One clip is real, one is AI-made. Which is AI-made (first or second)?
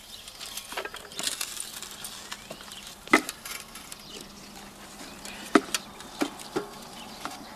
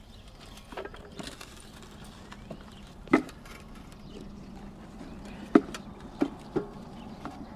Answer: second